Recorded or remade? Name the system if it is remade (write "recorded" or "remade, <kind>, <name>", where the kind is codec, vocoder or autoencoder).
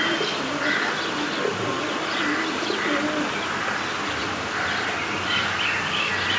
recorded